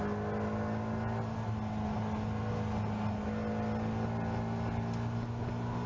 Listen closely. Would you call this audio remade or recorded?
recorded